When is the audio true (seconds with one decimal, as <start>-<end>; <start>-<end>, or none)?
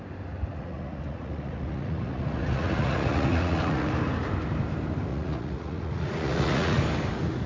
0.0-0.5; 3.9-5.1; 6.8-7.5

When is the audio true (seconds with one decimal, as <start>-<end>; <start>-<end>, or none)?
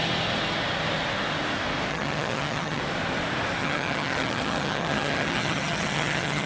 0.0-1.9; 2.8-3.6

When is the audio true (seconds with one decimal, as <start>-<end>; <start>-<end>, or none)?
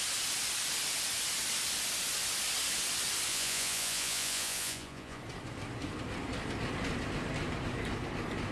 0.0-3.3; 5.2-8.5